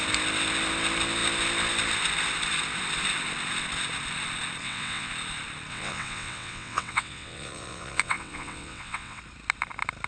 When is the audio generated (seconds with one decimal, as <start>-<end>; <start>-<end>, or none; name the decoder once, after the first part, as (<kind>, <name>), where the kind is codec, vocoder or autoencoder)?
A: 4.6-5.1 (vocoder, WaveNeXt); 5.7-9.2